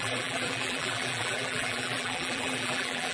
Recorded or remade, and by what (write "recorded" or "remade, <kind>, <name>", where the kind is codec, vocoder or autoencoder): remade, vocoder, BigVGAN v2